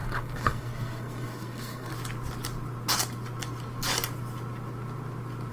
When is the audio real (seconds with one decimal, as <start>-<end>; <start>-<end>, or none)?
1.9-5.5